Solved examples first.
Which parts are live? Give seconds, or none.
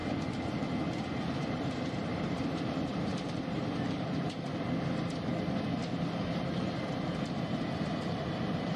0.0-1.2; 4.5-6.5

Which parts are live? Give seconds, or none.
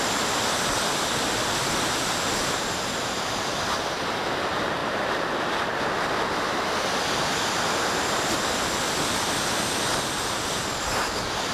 0.0-11.5